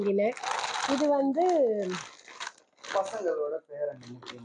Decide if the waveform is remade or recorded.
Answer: recorded